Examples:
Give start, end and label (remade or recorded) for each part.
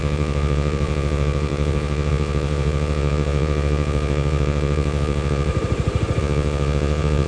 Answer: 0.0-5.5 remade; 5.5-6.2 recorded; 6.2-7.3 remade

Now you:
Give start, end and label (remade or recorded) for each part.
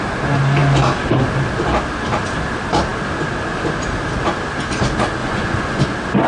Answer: 0.0-5.2 recorded; 5.2-5.8 remade; 5.8-6.3 recorded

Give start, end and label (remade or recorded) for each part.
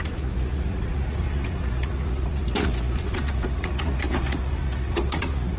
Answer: 0.0-5.6 remade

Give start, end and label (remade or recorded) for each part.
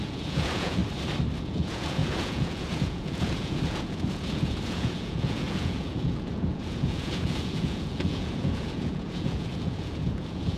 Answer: 0.0-0.8 remade; 0.8-1.4 recorded; 1.4-10.6 remade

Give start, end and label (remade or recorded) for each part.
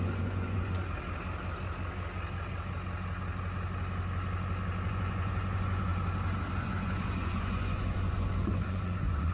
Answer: 0.0-0.8 remade; 0.8-4.9 recorded; 4.9-5.9 remade; 5.9-6.5 recorded; 6.5-9.3 remade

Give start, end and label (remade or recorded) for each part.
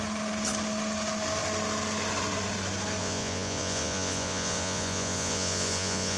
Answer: 0.0-3.0 recorded; 3.0-6.2 remade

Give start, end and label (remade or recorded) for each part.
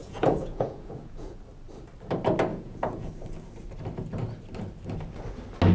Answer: 0.0-1.4 remade; 1.4-2.5 recorded; 2.5-3.1 remade; 3.1-5.7 recorded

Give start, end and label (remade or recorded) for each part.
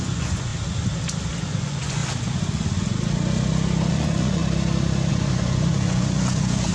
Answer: 0.0-0.5 remade; 0.5-1.3 recorded; 1.3-2.0 remade; 2.0-3.9 recorded; 3.9-4.4 remade; 4.4-5.1 recorded; 5.1-6.7 remade